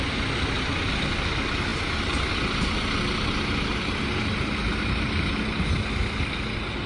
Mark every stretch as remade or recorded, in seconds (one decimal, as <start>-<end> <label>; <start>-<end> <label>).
0.0-3.7 recorded; 3.7-4.3 remade; 4.3-4.7 recorded; 4.7-5.4 remade; 5.4-6.9 recorded